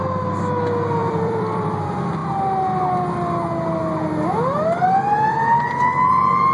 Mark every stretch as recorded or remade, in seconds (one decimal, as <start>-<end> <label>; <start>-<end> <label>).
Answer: 0.0-1.0 recorded; 1.0-1.8 remade; 1.8-6.5 recorded